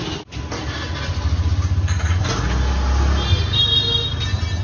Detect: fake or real real